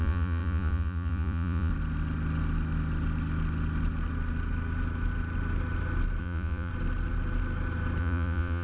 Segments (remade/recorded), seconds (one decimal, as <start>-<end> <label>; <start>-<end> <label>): 0.0-1.7 remade; 1.7-6.2 recorded; 6.2-6.7 remade; 6.7-8.0 recorded; 8.0-8.6 remade